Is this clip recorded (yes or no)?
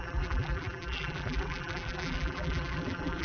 no